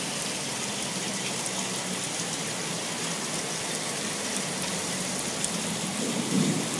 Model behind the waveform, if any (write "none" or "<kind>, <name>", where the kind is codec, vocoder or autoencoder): none